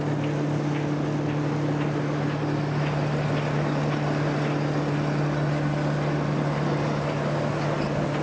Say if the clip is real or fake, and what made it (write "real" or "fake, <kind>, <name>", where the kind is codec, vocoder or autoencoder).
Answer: real